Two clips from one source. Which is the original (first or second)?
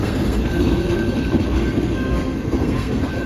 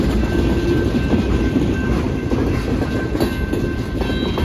second